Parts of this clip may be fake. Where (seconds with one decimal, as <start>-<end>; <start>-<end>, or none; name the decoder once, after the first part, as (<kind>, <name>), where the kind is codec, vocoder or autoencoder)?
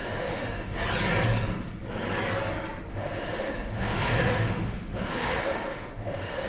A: 0.0-0.8 (autoencoder, DAC-VAE); 2.9-6.5